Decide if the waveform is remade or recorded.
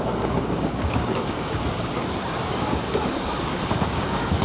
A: remade